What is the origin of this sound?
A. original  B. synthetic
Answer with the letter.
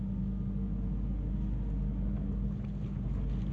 A